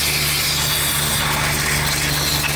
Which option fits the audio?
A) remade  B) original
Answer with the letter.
B